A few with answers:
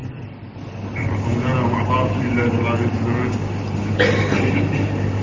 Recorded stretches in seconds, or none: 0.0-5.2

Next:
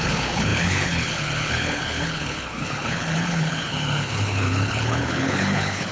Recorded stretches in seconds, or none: none

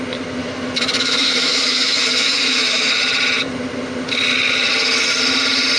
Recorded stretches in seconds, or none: 0.0-0.4; 2.9-5.8

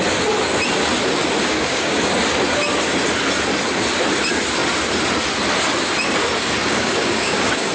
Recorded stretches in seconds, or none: 0.0-1.4; 2.0-6.6

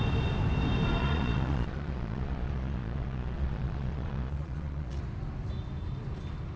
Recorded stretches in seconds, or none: 0.0-1.0; 5.0-6.6

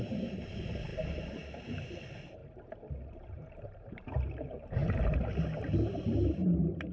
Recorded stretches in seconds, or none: 2.4-3.2; 4.8-5.6

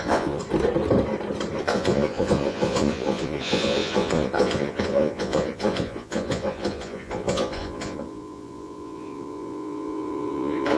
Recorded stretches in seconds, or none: 0.4-1.6

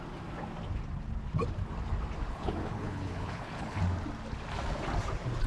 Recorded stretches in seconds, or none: 0.0-2.3; 3.8-5.5